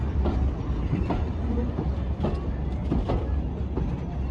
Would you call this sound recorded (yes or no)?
yes